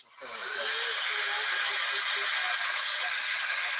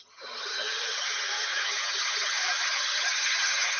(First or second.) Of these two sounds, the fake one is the second